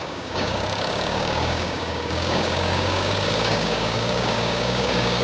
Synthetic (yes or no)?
yes